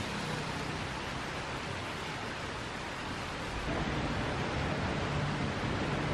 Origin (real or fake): real